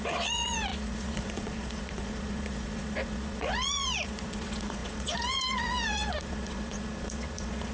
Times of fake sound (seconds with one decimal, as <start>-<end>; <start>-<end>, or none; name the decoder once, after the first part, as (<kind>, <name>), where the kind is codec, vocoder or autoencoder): 0.0-7.7 (vocoder, Vocos)